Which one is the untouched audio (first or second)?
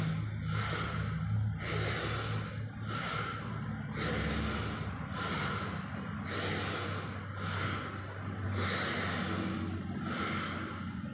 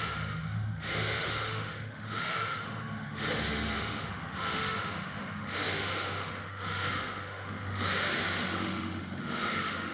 first